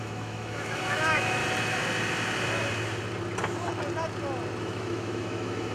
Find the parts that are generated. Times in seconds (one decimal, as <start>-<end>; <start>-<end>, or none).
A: 0.0-1.4; 4.6-5.7